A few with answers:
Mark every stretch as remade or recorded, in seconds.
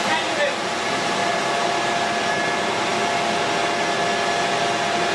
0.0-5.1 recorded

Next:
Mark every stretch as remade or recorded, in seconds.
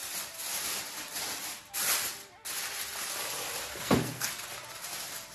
0.0-3.7 recorded; 3.7-4.3 remade; 4.3-5.3 recorded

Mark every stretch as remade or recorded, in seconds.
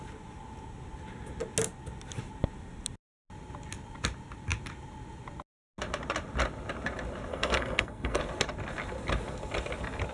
0.0-7.3 recorded; 7.3-8.2 remade; 8.2-10.1 recorded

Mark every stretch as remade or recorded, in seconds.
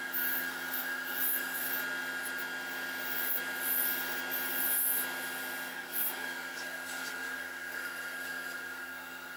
0.0-1.7 remade; 1.7-5.7 recorded; 5.7-9.4 remade